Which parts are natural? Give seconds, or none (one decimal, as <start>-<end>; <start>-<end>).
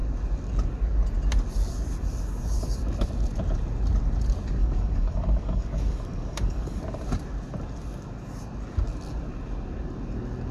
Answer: 0.0-4.6; 6.8-10.5